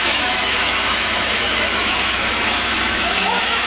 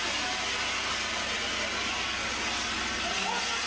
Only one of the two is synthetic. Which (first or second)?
first